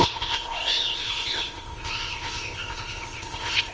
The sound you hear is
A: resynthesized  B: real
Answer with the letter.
A